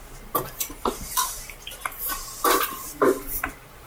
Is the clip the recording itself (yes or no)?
no